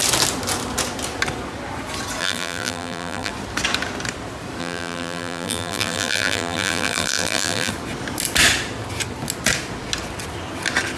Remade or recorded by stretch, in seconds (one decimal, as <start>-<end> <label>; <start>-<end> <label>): 0.0-2.2 recorded; 2.2-3.3 remade; 3.3-4.6 recorded; 4.6-7.7 remade; 7.7-11.0 recorded